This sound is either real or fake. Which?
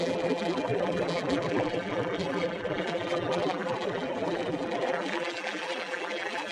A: fake